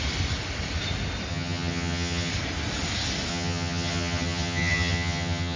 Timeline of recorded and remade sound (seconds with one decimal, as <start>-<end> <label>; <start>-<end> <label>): 0.0-1.3 recorded; 1.3-2.3 remade; 2.3-3.3 recorded; 3.3-5.6 remade